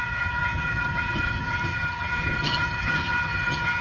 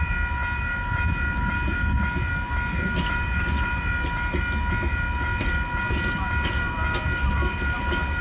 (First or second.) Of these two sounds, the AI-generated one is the first